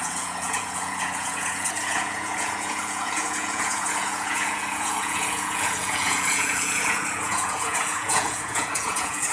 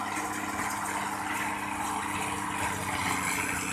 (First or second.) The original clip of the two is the second